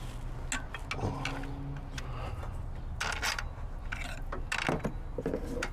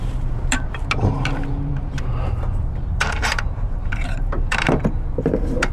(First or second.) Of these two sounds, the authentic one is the first